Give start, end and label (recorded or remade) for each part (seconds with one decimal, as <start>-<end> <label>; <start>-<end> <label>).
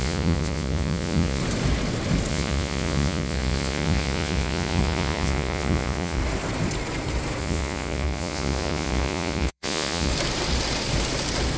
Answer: 0.0-1.4 remade; 1.4-2.3 recorded; 2.3-6.2 remade; 6.2-7.4 recorded; 7.4-10.1 remade; 10.1-11.6 recorded